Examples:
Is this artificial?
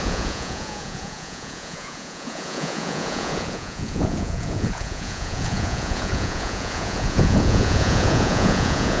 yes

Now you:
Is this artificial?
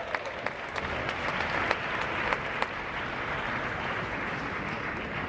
no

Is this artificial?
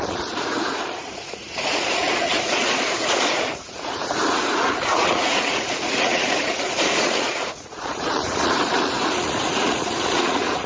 yes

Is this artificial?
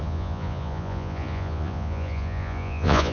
yes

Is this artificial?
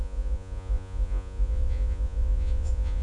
yes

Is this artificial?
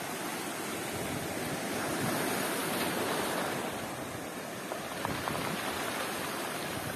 no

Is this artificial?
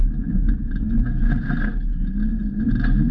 no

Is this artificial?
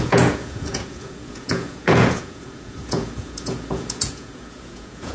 yes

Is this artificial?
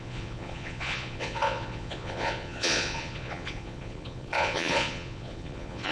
yes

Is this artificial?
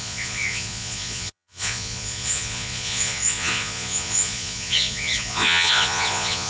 yes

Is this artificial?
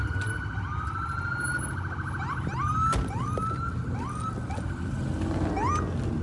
no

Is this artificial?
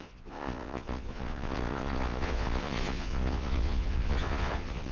yes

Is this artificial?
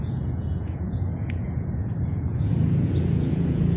yes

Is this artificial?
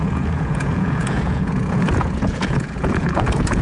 yes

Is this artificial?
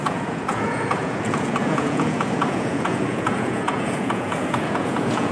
yes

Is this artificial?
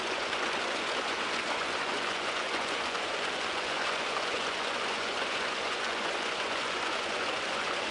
yes